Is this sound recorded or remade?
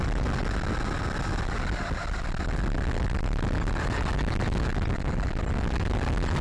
recorded